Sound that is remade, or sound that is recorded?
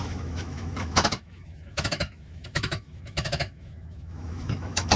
remade